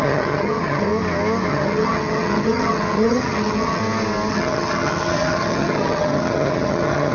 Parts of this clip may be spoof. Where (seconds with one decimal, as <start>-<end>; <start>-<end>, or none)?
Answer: 0.0-0.9; 1.5-3.8; 4.3-7.1